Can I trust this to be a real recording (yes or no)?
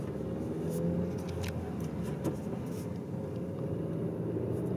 yes